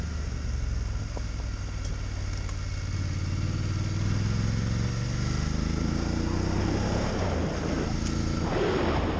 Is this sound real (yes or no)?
yes